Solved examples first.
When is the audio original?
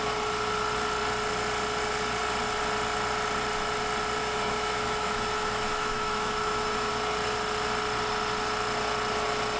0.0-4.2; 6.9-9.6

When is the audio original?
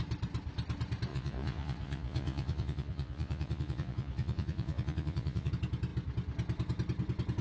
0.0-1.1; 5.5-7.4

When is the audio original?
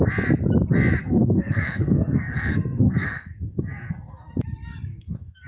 0.0-1.0; 4.3-4.9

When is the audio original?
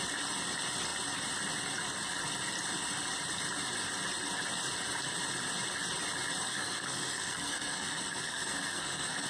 0.0-6.5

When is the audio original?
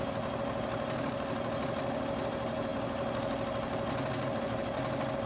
0.0-5.3